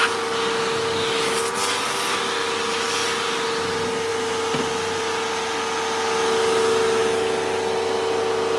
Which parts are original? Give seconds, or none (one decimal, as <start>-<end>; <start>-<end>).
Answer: 0.0-8.6

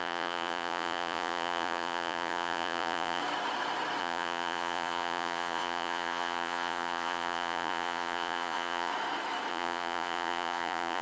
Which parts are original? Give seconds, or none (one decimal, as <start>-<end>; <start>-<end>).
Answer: 3.2-4.0; 8.9-9.5

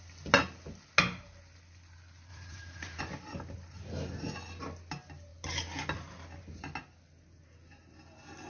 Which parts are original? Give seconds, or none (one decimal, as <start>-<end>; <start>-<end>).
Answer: 0.0-2.3; 3.0-8.5

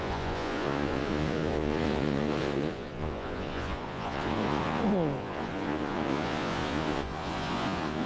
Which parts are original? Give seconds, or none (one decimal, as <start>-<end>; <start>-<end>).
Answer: none

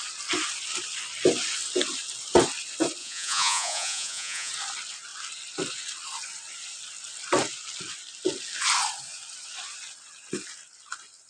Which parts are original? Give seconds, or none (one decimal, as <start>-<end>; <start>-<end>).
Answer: 0.0-3.0; 4.5-11.3

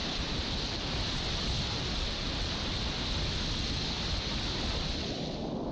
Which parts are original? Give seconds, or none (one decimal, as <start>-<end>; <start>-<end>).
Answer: 0.0-5.7

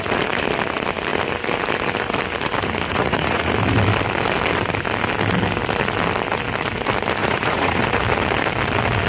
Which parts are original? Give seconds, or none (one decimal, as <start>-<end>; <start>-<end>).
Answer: 0.0-2.9; 3.5-7.2; 7.8-9.1

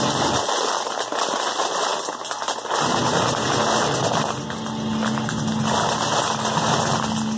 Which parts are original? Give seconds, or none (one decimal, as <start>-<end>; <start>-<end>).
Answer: 0.0-7.4